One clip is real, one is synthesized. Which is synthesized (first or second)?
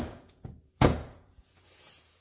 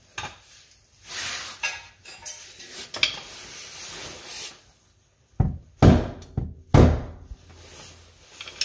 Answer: first